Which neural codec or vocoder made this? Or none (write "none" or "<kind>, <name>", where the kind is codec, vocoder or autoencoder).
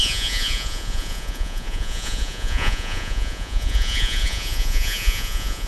vocoder, Vocos